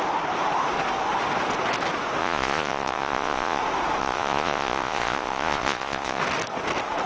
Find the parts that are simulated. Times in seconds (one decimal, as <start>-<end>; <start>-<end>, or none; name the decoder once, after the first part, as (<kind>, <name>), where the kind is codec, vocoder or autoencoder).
2.2-3.6 (vocoder, Vocos); 4.0-6.2